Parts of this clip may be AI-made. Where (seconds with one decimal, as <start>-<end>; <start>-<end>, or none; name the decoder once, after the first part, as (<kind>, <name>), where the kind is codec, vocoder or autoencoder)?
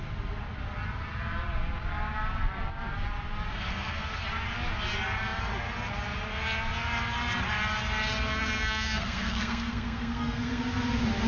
3.5-4.2 (codec, SNAC); 8.3-10.6